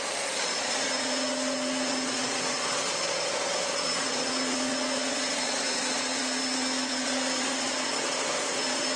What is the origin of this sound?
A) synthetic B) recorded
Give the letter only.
A